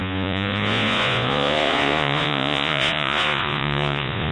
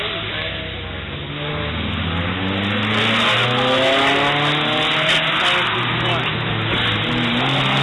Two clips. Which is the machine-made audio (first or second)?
first